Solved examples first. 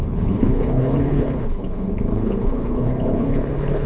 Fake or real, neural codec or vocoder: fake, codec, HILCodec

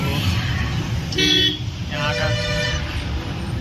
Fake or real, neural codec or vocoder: real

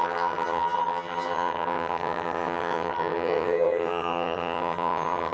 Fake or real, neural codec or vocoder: fake, vocoder, HiFi-GAN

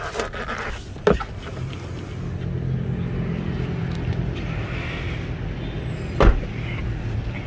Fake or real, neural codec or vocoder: real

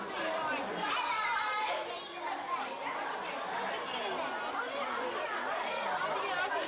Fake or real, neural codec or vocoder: real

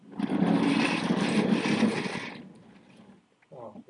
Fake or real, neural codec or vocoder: real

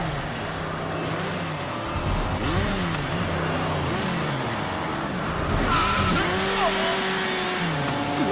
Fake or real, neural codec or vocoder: real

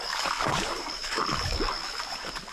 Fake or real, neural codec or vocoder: fake, codec, DAC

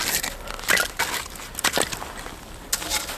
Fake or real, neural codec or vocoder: real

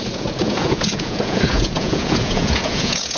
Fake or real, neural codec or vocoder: fake, vocoder, Vocos